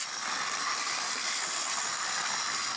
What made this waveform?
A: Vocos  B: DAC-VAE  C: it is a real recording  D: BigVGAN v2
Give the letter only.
C